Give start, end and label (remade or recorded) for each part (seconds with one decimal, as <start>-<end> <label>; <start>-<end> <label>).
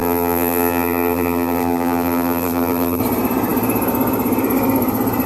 0.0-3.0 remade; 3.0-5.3 recorded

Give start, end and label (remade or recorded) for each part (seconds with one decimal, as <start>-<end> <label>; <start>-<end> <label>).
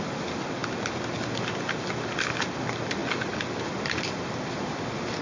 0.0-5.2 recorded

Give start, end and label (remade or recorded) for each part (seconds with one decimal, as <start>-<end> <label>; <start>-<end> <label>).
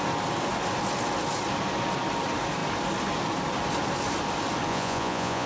0.0-4.7 recorded; 4.7-5.5 remade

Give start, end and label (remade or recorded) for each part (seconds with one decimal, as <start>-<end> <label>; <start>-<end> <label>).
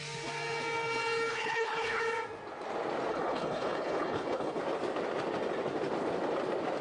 0.0-1.3 recorded; 1.3-2.0 remade; 2.0-3.1 recorded; 3.1-4.6 remade; 4.6-6.8 recorded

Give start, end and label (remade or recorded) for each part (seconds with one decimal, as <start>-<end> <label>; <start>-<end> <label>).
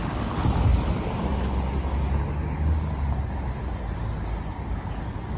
0.0-0.7 recorded; 0.7-1.3 remade; 1.3-5.4 recorded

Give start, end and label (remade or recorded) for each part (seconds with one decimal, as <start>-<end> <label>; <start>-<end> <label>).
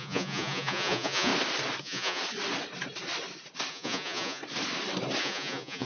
0.0-1.3 remade; 1.3-1.8 recorded; 1.8-2.2 remade; 2.2-3.7 recorded; 3.7-4.4 remade; 4.4-5.2 recorded; 5.2-5.9 remade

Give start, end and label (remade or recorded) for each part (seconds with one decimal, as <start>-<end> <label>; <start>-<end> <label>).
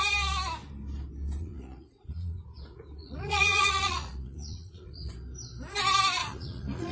0.0-1.4 recorded; 1.4-2.4 remade; 2.4-3.0 recorded; 3.0-5.1 remade; 5.1-6.2 recorded; 6.2-6.9 remade